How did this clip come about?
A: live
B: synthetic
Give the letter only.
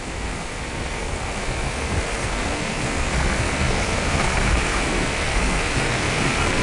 B